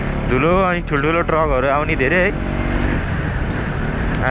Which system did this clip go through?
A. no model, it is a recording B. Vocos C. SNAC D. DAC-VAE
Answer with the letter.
A